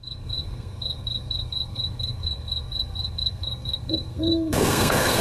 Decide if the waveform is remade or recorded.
remade